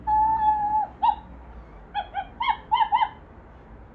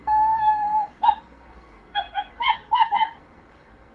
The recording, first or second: first